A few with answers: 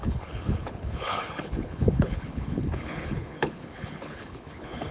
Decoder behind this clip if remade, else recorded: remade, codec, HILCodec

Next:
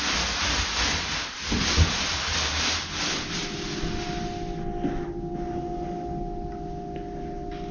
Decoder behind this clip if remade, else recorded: recorded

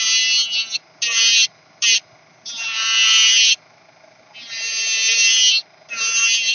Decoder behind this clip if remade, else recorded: recorded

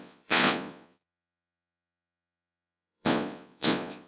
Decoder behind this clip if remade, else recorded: remade, vocoder, Vocos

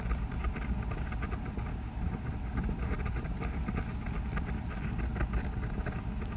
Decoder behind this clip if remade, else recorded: recorded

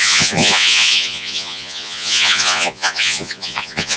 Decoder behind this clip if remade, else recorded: remade, vocoder, Vocos